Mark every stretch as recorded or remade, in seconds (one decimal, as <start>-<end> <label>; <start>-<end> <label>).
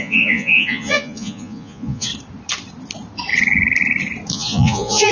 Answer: 0.0-2.1 remade; 2.1-4.3 recorded; 4.3-5.1 remade